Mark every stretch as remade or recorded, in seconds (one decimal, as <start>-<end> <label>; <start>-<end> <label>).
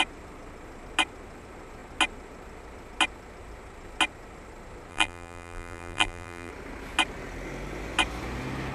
0.0-4.9 recorded; 4.9-6.5 remade; 6.5-8.7 recorded